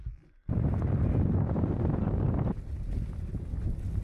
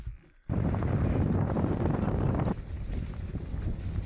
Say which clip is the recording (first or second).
first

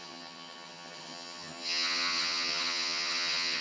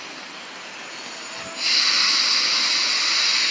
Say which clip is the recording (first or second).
second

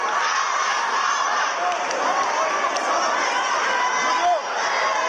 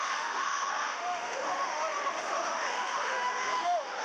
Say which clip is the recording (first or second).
first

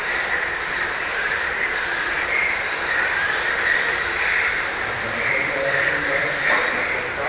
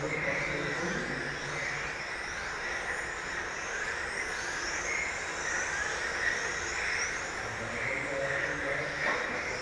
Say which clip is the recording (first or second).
second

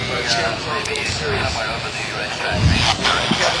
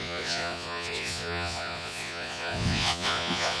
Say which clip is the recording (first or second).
first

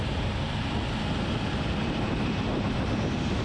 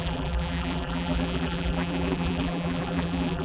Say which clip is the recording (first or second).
first